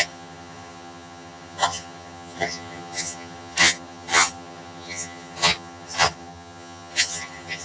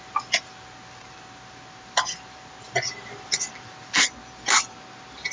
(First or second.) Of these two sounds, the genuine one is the second